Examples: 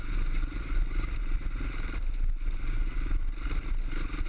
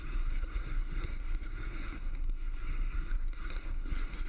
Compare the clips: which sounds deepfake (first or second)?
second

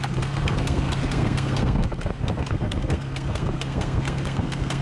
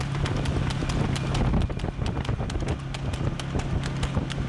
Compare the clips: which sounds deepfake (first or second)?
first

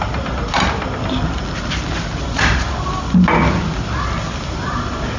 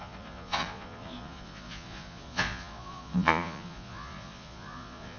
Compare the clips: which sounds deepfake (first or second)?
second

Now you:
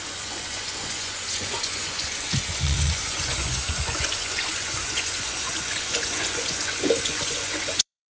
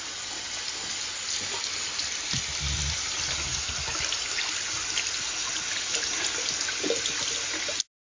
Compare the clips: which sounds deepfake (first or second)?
first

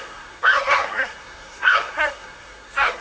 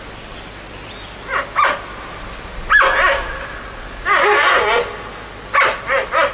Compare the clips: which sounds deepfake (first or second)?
first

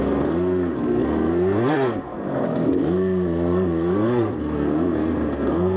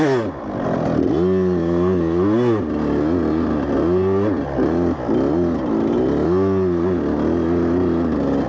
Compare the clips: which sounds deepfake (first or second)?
first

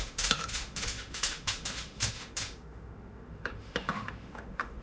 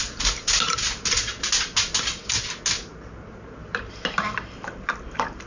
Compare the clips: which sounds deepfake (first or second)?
first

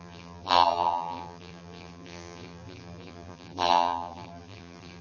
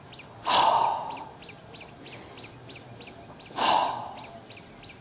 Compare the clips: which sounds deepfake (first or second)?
first